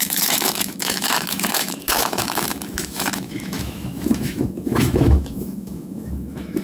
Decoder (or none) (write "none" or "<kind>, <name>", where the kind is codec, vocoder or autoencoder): autoencoder, DAC-VAE